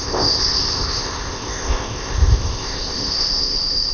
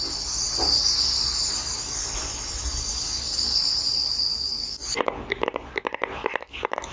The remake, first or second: first